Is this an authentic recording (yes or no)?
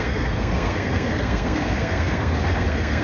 no